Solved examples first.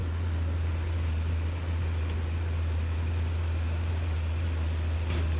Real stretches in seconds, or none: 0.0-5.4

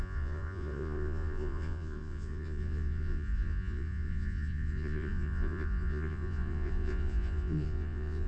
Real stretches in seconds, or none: none